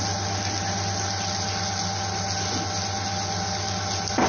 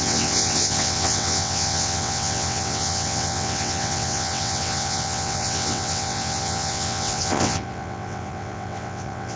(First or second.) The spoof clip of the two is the second